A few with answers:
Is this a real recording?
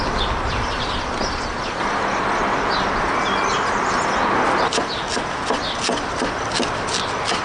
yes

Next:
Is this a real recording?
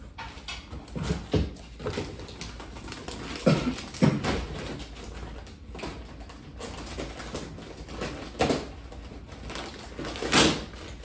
yes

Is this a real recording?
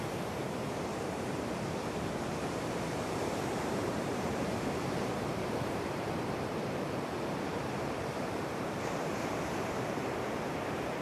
no